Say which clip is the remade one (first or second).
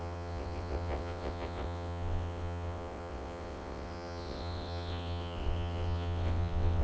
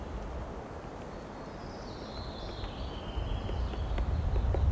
first